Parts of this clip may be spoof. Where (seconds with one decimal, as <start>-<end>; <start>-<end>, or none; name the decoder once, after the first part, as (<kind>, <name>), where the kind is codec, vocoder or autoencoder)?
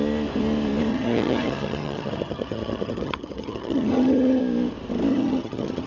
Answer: 0.9-4.4 (vocoder, HiFi-GAN); 5.1-5.9